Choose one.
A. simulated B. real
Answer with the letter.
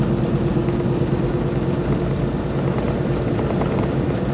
B